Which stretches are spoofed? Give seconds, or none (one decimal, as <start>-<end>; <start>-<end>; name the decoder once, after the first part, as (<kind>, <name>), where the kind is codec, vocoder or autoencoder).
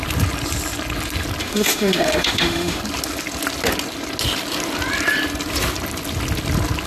1.4-2.8 (autoencoder, DAC-VAE)